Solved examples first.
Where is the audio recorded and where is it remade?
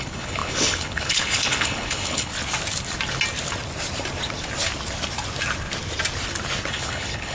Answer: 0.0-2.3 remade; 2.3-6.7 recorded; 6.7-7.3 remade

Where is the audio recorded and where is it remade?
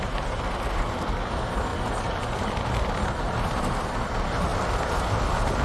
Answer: 0.0-5.6 recorded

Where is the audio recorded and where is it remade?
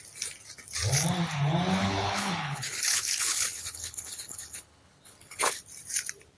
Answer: 0.0-1.8 recorded; 1.8-5.6 remade; 5.6-6.4 recorded